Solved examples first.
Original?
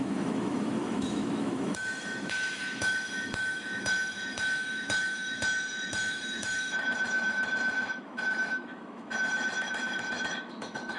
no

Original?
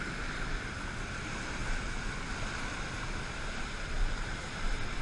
yes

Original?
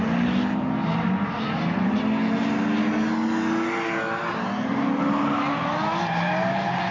yes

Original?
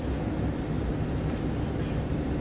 yes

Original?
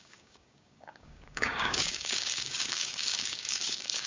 no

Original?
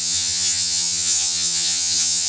no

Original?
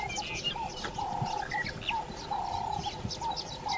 yes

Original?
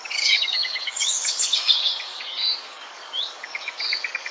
no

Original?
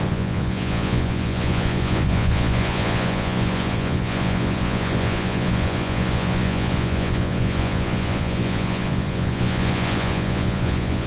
no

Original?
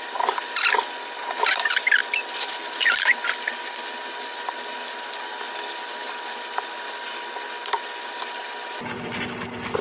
yes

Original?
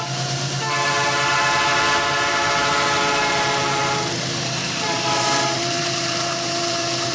no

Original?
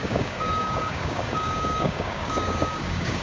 no